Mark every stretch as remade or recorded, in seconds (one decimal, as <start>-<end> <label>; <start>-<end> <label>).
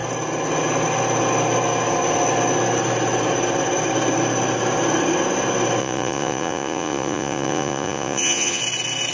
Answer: 0.0-5.8 recorded; 5.8-8.6 remade; 8.6-9.1 recorded